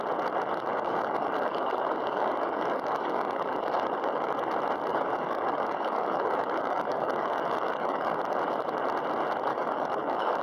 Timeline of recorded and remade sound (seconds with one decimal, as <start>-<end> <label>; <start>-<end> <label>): 0.0-0.7 recorded; 0.7-4.4 remade; 4.4-4.9 recorded; 4.9-8.2 remade; 8.2-9.5 recorded; 9.5-10.4 remade